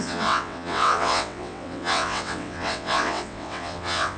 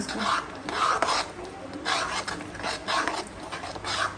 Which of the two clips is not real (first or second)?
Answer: first